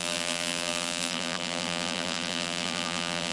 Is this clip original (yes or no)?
no